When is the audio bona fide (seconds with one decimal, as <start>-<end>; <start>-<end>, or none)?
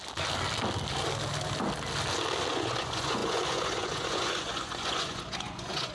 0.0-2.5